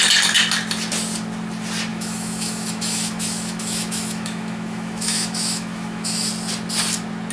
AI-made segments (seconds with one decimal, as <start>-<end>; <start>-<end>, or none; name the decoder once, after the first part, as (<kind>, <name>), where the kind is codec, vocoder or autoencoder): 1.9-6.3 (autoencoder, DAC-VAE)